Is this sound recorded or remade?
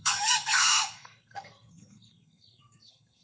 remade